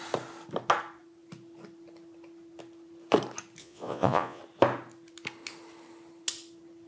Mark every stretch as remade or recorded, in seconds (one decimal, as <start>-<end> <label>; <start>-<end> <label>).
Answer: 0.0-3.6 recorded; 3.6-4.4 remade; 4.4-6.9 recorded